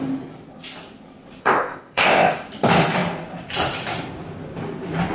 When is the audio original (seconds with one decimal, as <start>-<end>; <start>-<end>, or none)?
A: 0.0-1.4; 2.3-5.1